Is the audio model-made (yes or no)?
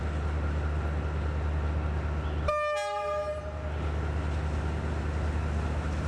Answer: no